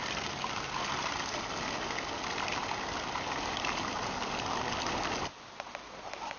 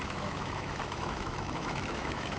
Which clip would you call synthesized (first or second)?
second